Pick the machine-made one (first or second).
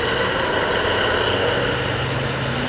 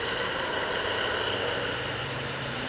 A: second